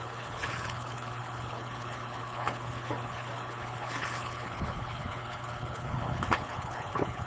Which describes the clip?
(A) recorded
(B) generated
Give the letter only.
B